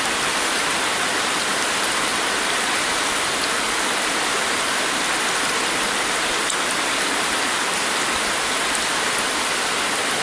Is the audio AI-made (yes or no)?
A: no